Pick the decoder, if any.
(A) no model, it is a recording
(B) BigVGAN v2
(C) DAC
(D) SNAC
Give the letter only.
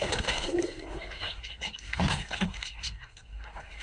D